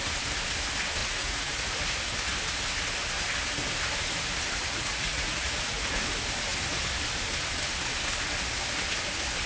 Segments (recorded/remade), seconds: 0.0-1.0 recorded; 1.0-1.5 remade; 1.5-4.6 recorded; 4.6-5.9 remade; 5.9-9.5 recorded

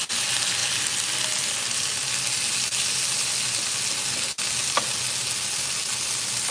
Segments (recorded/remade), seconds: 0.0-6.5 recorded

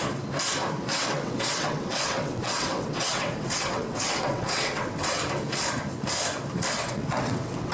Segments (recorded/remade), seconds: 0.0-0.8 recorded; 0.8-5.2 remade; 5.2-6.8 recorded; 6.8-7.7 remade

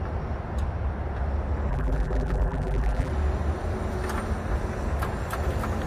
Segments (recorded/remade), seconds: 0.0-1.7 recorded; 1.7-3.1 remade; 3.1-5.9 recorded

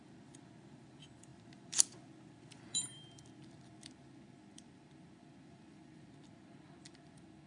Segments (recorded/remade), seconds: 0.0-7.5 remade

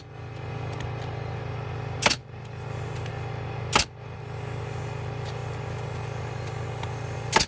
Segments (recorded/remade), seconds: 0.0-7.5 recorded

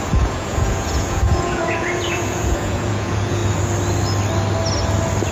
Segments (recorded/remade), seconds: 0.0-3.4 remade; 3.4-5.3 recorded

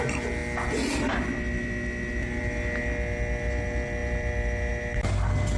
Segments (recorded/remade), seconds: 0.0-5.6 recorded